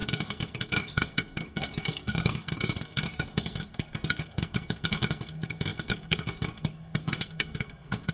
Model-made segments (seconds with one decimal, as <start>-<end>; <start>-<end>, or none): 0.0-8.1